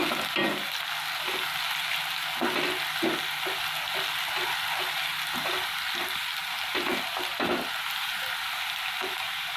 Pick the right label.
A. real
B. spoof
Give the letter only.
A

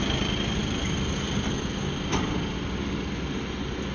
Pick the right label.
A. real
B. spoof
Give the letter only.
A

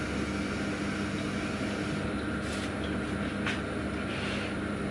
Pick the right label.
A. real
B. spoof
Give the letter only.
A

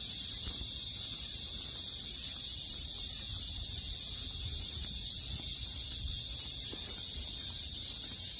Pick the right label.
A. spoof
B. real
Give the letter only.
A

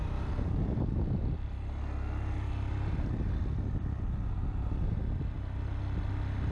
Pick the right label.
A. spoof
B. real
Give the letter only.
B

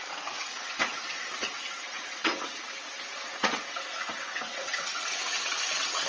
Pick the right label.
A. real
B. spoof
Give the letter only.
B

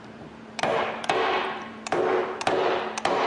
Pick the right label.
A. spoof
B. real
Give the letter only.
A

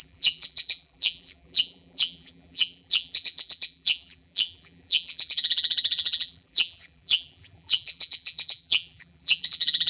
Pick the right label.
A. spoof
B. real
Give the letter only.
A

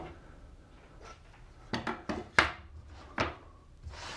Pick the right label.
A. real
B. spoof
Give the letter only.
A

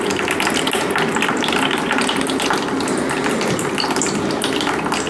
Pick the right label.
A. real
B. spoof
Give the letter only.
A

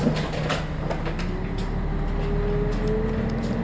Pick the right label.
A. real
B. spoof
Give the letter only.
A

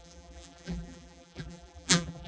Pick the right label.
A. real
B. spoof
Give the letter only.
B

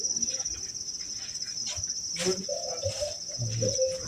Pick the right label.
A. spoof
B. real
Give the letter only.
B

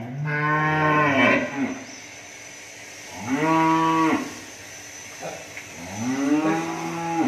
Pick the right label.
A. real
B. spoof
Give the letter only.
A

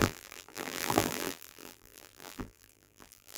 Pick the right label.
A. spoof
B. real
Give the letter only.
A